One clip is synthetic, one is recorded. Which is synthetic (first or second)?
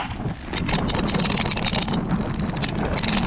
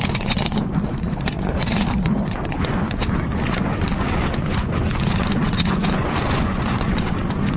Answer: second